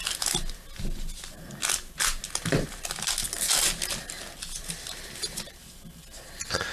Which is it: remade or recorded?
recorded